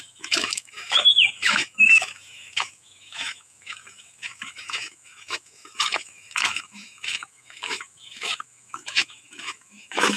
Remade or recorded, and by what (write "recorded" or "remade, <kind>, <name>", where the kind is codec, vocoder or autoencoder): remade, autoencoder, DAC-VAE